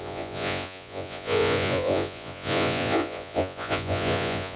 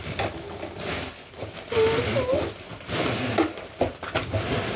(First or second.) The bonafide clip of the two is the second